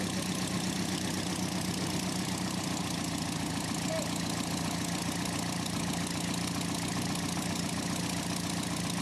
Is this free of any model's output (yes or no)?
yes